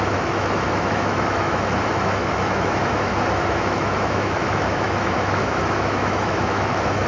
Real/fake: fake